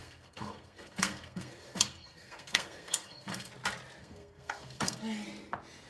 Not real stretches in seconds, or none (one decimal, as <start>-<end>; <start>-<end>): 0.0-3.5; 4.0-5.0